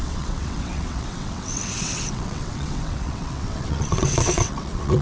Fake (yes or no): yes